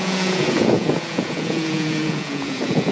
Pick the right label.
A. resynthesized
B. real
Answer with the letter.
A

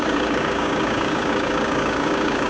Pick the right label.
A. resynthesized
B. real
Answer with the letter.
A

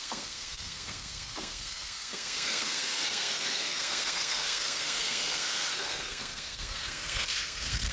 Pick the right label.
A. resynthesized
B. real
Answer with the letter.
A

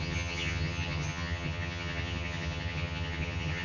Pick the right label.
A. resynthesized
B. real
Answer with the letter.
A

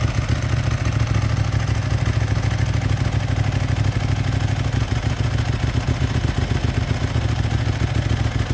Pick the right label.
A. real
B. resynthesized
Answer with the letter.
A